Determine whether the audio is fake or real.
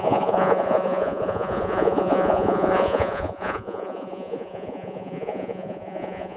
fake